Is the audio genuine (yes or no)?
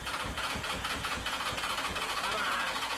no